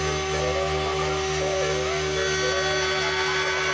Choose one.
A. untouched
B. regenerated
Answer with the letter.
A